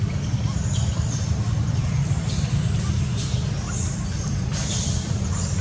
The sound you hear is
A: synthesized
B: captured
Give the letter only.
A